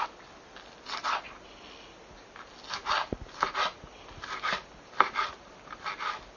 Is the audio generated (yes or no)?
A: no